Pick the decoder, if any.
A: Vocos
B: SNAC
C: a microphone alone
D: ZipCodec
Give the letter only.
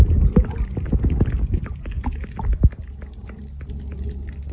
C